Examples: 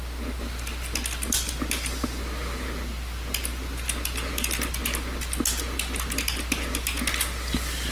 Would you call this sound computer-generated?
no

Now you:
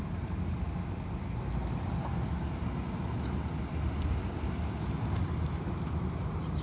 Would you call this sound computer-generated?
no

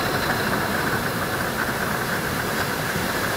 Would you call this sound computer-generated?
no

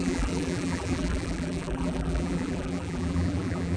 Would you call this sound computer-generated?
yes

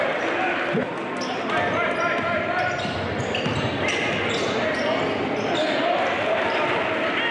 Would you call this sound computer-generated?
no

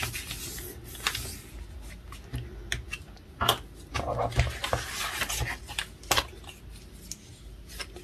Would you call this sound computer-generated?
no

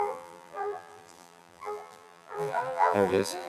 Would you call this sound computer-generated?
yes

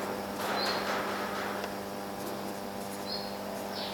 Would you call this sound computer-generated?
no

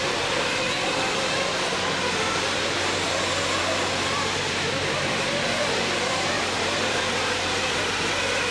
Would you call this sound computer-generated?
yes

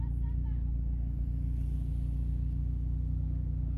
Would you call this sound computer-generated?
no